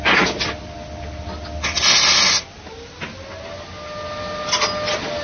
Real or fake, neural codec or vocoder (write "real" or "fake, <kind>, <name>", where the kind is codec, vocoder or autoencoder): real